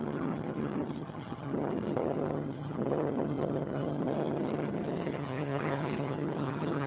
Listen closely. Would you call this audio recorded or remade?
remade